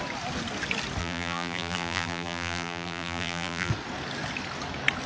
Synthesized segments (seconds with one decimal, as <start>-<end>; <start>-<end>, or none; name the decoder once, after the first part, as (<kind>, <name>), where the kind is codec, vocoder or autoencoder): 1.0-3.7 (vocoder, BigVGAN v2)